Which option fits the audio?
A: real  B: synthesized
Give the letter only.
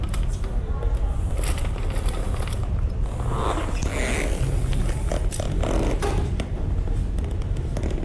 A